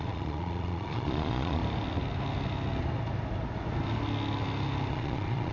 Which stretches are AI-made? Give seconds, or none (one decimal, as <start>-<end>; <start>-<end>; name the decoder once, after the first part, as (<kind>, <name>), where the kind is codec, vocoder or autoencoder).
0.0-1.6 (vocoder, Vocos); 4.9-5.5